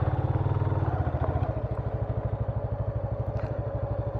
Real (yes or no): yes